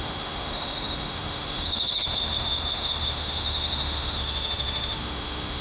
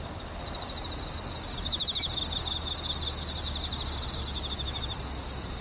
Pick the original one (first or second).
second